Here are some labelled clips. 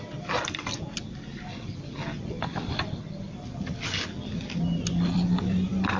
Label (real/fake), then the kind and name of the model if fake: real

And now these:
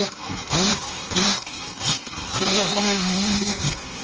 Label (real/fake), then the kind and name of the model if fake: fake, codec, SNAC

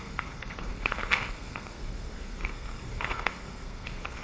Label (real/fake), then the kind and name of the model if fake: fake, codec, SNAC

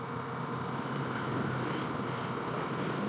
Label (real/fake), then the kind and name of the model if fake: real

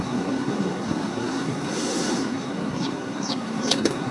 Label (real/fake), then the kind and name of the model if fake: fake, codec, SNAC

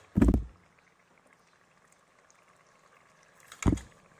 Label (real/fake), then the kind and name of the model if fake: real